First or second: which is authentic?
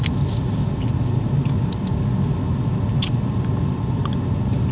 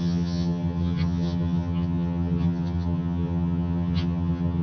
first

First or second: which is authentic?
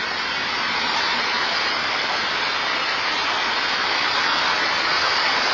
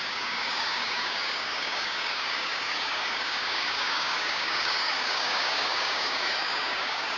first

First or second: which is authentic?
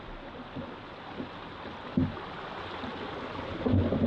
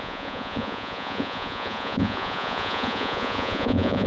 first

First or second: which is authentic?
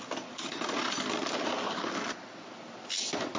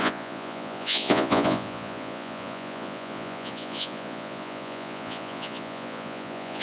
first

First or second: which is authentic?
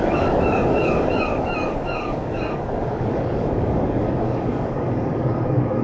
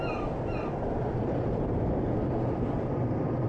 second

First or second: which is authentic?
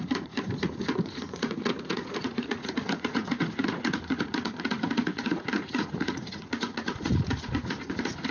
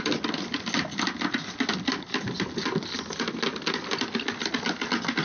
second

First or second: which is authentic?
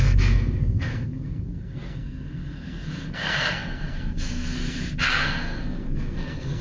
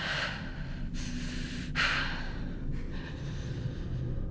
second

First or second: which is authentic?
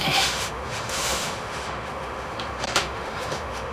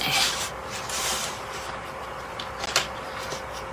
second